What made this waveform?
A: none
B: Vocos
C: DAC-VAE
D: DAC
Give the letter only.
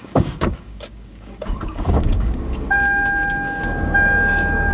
D